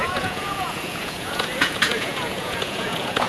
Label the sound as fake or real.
fake